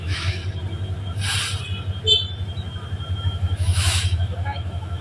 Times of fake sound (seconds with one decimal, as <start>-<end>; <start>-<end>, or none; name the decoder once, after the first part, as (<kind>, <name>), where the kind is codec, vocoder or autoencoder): 0.0-0.4 (autoencoder, DAC-VAE); 3.2-5.0